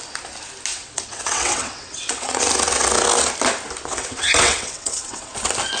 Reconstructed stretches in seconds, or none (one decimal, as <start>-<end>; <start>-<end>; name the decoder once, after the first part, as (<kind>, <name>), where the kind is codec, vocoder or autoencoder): 0.7-2.4 (vocoder, WaveNeXt); 3.9-5.3